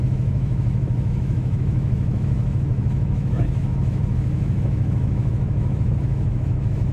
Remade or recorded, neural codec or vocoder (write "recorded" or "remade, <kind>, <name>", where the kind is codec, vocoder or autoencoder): remade, autoencoder, DAC-VAE